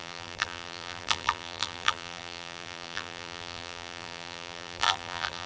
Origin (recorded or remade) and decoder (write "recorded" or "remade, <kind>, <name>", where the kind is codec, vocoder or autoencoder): remade, vocoder, BigVGAN v2